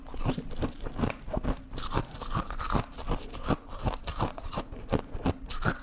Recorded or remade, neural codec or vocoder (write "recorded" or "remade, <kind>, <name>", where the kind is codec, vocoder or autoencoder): recorded